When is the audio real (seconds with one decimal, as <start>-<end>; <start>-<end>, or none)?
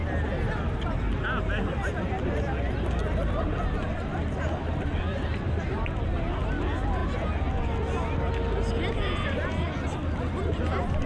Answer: 0.0-11.1